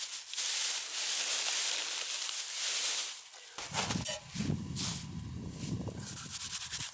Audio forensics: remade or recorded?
recorded